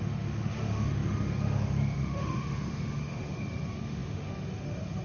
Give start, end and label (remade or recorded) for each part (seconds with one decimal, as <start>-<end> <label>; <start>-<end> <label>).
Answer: 0.0-5.0 remade